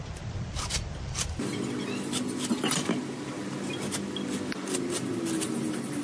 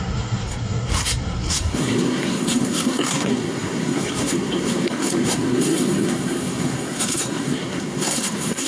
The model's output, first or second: second